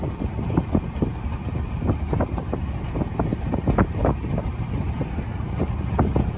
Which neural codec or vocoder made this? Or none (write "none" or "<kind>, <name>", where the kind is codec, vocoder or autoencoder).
none